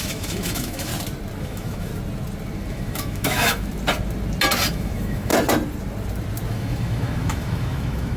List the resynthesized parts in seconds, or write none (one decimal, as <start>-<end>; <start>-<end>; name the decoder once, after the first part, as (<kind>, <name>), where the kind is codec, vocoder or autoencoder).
0.0-0.9 (autoencoder, DAC-VAE); 1.4-1.9; 2.7-3.7; 4.7-5.3; 6.5-8.2